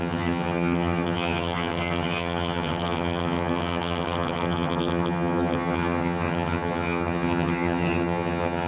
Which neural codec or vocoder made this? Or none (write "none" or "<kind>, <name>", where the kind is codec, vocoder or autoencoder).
vocoder, HiFi-GAN